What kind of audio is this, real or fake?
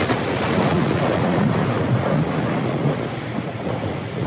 fake